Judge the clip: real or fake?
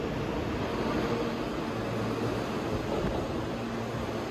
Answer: real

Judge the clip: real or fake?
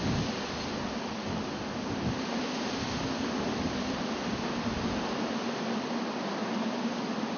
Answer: real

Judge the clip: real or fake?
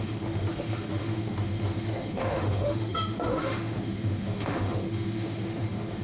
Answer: fake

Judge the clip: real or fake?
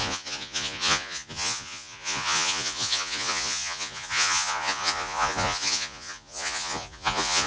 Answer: fake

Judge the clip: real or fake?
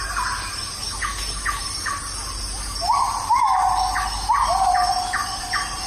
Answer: real